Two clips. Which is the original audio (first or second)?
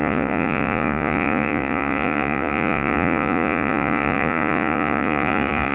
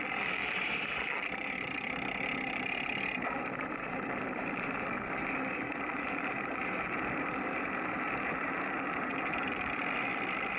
second